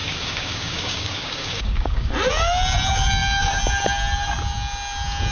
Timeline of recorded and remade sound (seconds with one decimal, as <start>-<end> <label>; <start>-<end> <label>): 0.0-2.1 remade; 2.1-5.3 recorded